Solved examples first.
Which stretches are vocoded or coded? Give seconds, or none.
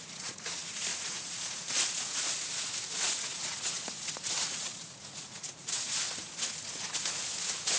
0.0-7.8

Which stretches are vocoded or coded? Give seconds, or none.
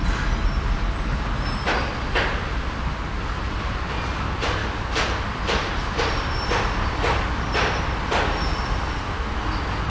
none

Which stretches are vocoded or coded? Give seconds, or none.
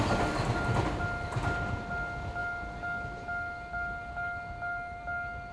none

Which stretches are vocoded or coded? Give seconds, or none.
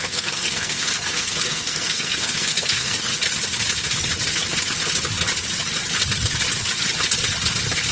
0.0-3.1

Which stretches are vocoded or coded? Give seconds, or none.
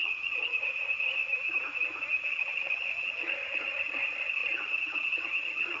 0.0-1.2; 2.3-5.8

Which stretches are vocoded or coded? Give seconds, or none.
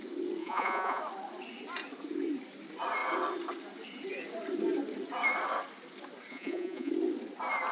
0.4-1.0; 6.3-6.9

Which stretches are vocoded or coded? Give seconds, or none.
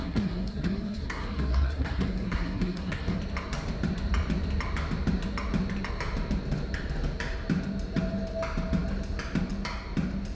0.0-3.2